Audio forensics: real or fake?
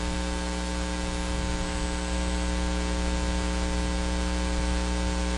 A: real